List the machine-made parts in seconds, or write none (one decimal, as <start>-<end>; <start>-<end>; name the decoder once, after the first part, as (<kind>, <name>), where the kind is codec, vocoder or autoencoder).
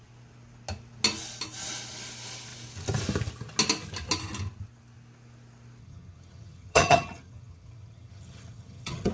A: 5.8-9.1 (vocoder, HiFi-GAN)